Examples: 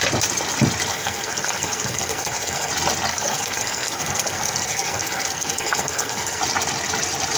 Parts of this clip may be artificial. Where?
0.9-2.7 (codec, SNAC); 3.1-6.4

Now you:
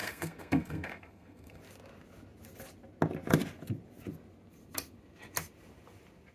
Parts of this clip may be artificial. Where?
0.0-1.6 (codec, SNAC)